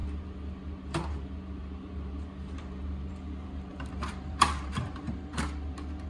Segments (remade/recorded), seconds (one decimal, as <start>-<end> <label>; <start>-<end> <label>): 0.0-3.7 recorded; 3.7-5.2 remade; 5.2-6.1 recorded